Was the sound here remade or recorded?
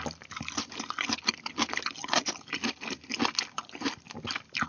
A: recorded